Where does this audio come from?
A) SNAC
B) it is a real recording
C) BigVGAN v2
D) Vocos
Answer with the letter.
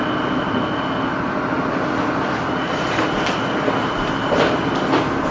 B